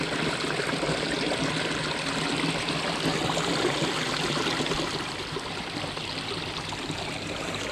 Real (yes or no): yes